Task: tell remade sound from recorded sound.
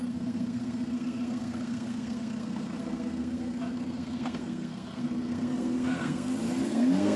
remade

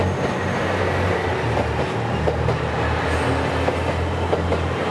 recorded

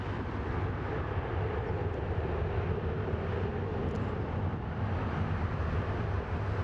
recorded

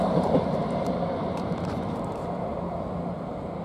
remade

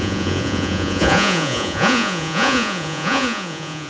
remade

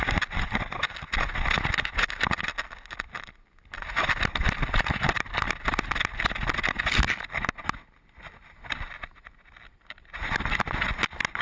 recorded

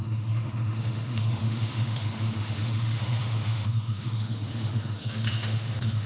remade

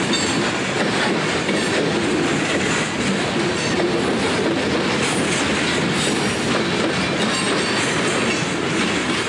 recorded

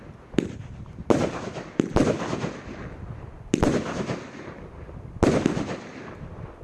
recorded